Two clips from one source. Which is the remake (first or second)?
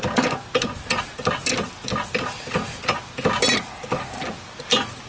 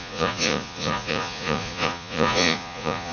second